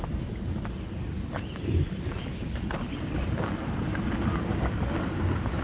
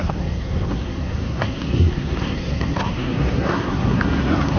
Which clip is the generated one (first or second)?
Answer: second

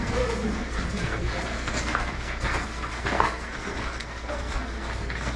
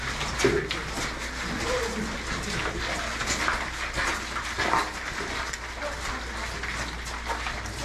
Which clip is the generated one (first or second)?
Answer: first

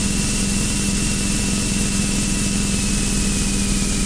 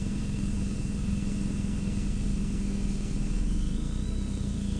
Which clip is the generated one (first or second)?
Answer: second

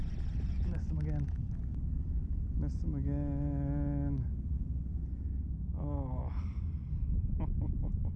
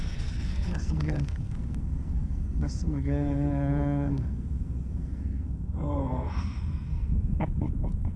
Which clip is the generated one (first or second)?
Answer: second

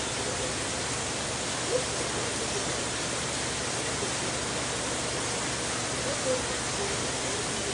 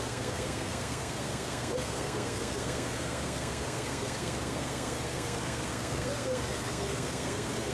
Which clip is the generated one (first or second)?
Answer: second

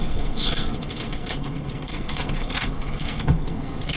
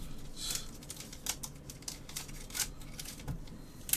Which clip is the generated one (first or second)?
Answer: first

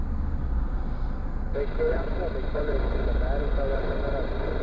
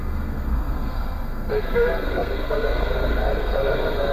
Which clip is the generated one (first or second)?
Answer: second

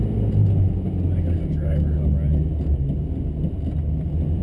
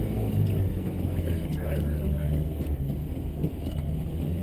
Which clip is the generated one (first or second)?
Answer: second